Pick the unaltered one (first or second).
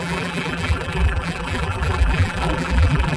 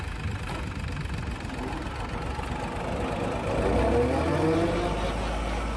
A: second